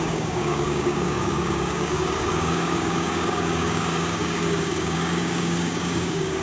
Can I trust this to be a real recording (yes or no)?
no